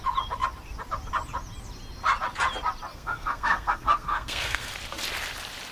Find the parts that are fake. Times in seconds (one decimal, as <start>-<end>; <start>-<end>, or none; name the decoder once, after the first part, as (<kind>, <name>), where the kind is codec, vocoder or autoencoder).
2.9-4.7 (codec, SNAC)